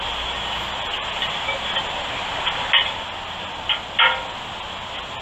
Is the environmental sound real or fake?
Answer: real